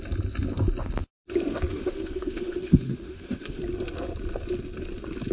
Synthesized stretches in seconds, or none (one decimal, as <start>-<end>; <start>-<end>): 1.7-3.6

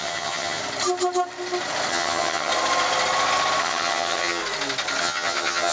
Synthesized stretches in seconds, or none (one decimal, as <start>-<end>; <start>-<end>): 0.0-0.6; 1.9-2.5; 3.6-4.4; 5.0-5.7

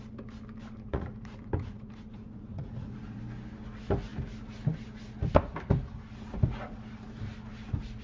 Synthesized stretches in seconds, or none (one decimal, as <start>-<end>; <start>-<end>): 0.9-3.2